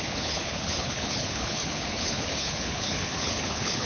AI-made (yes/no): yes